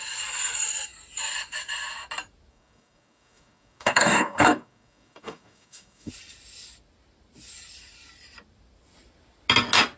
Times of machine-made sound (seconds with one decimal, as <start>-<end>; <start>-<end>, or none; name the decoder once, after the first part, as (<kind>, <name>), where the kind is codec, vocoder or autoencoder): 2.5-6.1 (codec, DAC)